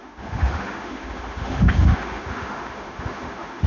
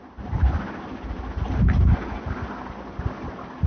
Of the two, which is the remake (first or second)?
first